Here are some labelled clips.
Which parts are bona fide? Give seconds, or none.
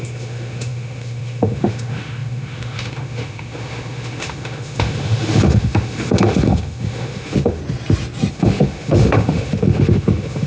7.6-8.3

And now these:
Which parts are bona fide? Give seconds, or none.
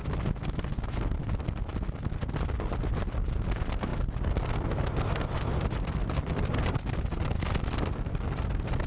0.0-8.9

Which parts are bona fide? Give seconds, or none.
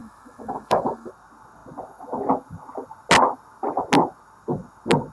1.1-5.1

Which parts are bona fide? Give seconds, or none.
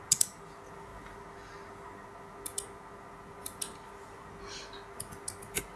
0.0-5.8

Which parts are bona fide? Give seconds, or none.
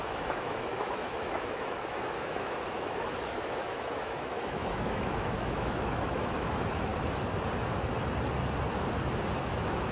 6.9-9.4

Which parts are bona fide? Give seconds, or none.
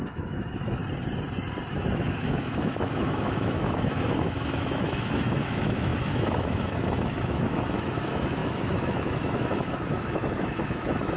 0.8-1.7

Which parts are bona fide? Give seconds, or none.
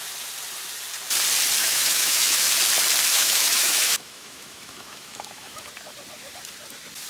0.0-1.6; 2.5-3.1; 5.7-7.1